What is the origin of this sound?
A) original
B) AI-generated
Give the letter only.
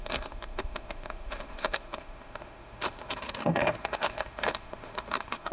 B